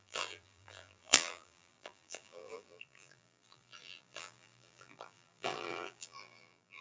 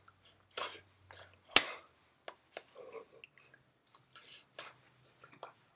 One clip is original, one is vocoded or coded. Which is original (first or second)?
second